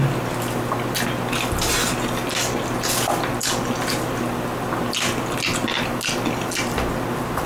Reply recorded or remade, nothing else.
recorded